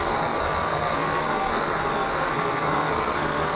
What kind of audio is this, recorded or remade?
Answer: remade